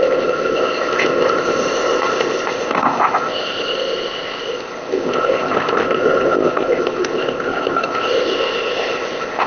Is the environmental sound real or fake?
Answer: fake